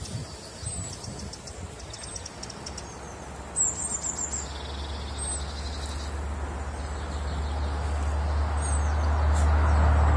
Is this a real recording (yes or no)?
yes